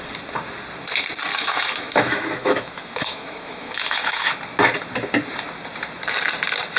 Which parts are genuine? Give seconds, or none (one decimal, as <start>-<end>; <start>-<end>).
0.0-1.3; 4.3-6.8